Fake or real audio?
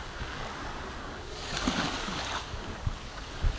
fake